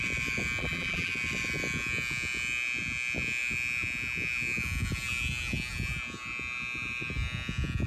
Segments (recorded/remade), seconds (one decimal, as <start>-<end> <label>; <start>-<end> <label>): 0.0-0.6 recorded; 0.6-1.1 remade; 1.1-7.9 recorded